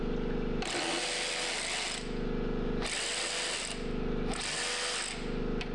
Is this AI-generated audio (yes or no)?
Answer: no